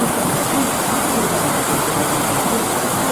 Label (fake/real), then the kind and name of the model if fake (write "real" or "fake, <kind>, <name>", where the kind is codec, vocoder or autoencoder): real